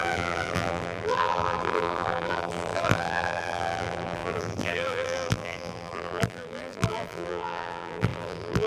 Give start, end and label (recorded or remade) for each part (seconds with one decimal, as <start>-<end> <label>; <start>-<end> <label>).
0.0-8.7 remade